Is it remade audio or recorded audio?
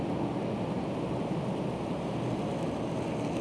recorded